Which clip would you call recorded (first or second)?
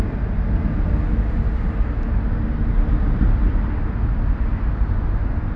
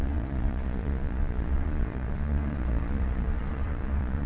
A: first